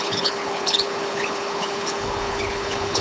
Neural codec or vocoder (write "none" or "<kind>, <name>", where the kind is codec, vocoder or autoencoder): codec, HILCodec